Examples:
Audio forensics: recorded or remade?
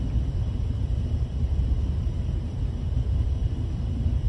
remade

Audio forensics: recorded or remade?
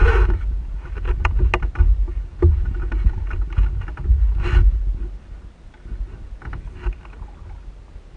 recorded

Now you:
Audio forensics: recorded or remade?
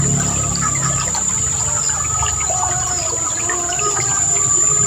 remade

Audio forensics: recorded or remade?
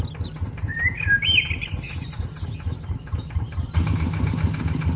recorded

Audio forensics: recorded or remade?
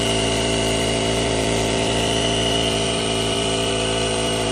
remade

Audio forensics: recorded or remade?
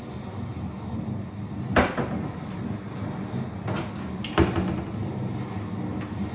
recorded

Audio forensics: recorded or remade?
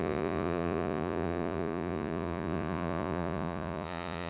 remade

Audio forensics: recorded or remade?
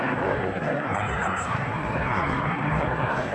remade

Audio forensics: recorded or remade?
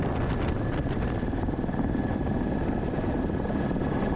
recorded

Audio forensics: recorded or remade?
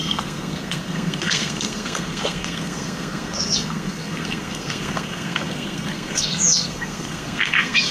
remade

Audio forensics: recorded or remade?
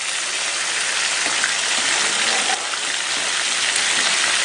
recorded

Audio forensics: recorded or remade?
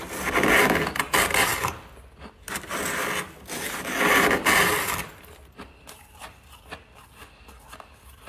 recorded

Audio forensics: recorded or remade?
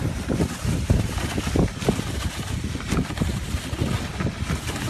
recorded